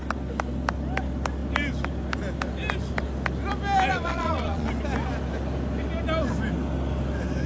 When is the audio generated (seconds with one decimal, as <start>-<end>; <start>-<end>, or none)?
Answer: 3.9-4.7